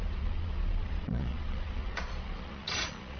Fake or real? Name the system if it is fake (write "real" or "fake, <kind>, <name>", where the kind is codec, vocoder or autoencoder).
fake, vocoder, Vocos